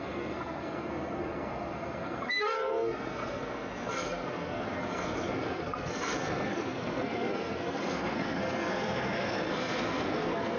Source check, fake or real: fake